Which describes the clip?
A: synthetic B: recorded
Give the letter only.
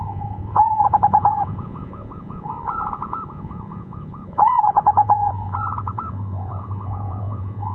A